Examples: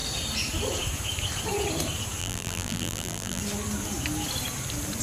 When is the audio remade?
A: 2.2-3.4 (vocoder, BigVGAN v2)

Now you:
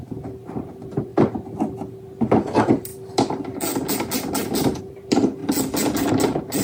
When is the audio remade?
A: 0.0-1.1 (vocoder, BigVGAN v2); 2.2-2.9; 4.8-5.4; 6.1-6.6

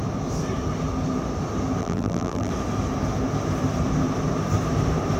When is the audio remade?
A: 1.8-2.5 (vocoder, BigVGAN v2)